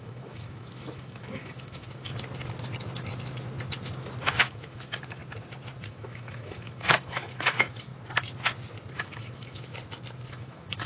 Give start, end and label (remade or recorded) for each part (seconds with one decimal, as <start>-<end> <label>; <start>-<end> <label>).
0.0-2.1 remade; 2.1-4.4 recorded; 4.4-5.2 remade; 5.2-5.8 recorded; 5.8-7.9 remade; 7.9-9.0 recorded; 9.0-9.7 remade; 9.7-10.3 recorded; 10.3-10.9 remade